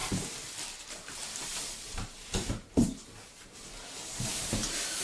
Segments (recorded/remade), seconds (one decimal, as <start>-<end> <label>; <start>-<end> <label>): 0.0-0.8 recorded; 0.8-5.0 remade